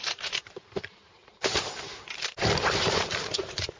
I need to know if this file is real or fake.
fake